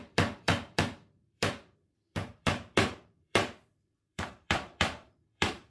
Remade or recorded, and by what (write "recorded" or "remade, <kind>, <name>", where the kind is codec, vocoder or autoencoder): remade, vocoder, BigVGAN v2